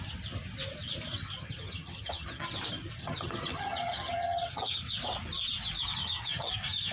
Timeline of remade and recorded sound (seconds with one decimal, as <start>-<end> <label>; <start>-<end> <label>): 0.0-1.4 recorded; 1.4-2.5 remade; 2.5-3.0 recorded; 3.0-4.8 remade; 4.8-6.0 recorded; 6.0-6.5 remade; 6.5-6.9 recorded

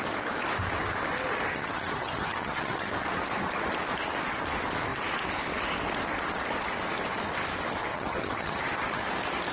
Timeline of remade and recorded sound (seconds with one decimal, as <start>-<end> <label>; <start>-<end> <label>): 0.0-1.5 recorded; 1.5-2.9 remade; 2.9-7.9 recorded; 7.9-8.6 remade; 8.6-9.5 recorded

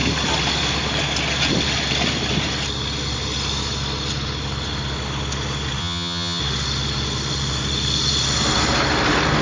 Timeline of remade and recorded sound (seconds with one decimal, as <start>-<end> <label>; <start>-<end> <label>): 0.0-5.8 recorded; 5.8-6.4 remade; 6.4-9.4 recorded

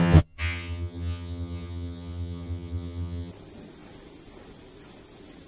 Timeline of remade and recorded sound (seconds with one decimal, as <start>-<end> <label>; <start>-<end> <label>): 0.0-3.3 remade; 3.3-5.5 recorded

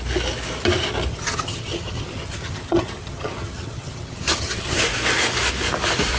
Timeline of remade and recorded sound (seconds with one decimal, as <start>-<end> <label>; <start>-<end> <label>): 0.0-1.1 recorded; 1.1-4.8 remade; 4.8-6.2 recorded